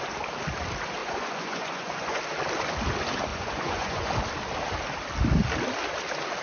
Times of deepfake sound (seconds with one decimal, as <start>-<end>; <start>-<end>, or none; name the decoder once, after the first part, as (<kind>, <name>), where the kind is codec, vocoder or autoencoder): 1.0-2.2 (vocoder, Vocos); 3.3-4.1

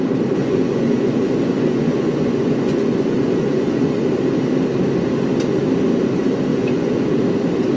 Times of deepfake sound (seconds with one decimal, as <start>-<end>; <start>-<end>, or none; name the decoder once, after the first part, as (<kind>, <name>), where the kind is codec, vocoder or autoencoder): 0.4-4.0 (vocoder, Vocos); 6.5-7.2

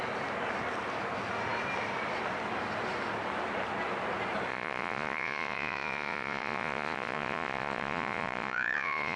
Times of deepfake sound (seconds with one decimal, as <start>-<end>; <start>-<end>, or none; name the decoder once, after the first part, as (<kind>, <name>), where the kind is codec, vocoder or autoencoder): 4.5-9.2 (vocoder, Vocos)

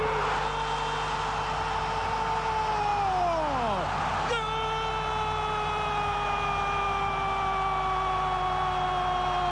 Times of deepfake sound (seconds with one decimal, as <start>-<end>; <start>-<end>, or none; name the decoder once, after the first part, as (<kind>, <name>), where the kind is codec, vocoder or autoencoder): none

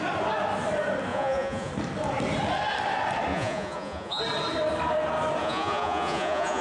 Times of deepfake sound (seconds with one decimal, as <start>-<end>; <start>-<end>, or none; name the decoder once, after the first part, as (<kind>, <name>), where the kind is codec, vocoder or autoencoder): 1.1-1.7 (vocoder, Vocos); 3.3-4.2; 5.4-6.6

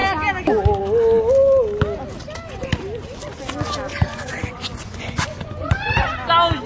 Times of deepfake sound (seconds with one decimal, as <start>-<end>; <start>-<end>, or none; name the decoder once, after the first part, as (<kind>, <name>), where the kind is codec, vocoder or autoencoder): 3.9-6.0 (vocoder, Vocos)

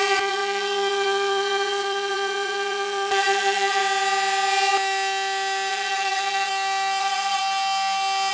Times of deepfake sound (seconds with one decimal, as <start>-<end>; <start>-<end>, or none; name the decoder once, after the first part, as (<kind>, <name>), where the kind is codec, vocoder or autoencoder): 0.0-3.8 (vocoder, Vocos); 5.7-6.5; 7.0-7.4

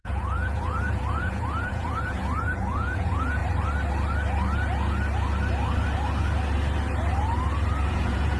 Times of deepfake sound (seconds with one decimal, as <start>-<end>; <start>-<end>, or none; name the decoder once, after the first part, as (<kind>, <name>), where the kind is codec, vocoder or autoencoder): 0.0-3.4 (vocoder, Vocos); 7.9-8.4